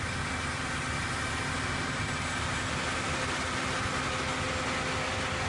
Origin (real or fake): real